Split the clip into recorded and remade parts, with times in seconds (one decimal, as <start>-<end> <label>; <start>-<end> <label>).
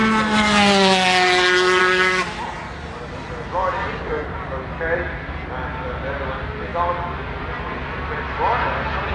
0.0-9.1 recorded